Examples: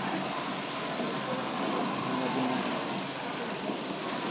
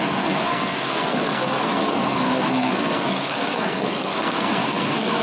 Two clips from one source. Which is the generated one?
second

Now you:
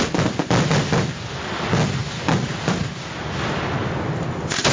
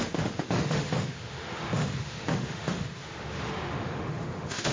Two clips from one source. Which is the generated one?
second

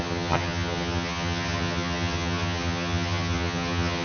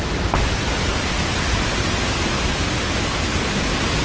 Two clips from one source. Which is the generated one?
first